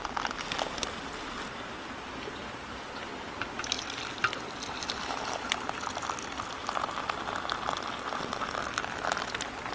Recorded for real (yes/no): yes